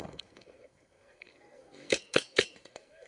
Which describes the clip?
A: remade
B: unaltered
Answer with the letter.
A